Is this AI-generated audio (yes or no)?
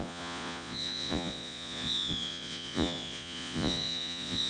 yes